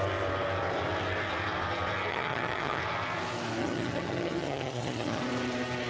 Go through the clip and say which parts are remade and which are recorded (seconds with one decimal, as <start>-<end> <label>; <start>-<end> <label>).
0.0-2.1 recorded; 2.1-2.8 remade; 2.8-3.6 recorded; 3.6-5.2 remade; 5.2-5.9 recorded